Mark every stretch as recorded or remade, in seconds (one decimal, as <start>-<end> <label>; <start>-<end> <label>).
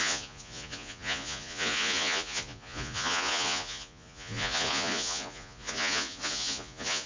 0.0-7.1 remade